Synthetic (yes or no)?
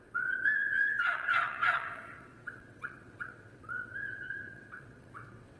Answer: yes